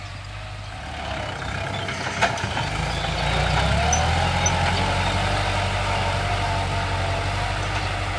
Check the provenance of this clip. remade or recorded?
recorded